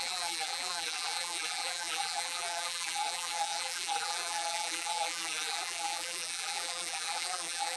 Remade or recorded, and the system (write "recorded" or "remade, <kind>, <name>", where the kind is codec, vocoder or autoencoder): remade, vocoder, BigVGAN v2